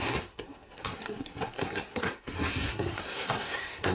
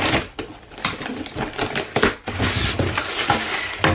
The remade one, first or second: first